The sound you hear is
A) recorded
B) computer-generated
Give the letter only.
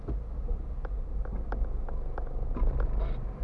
A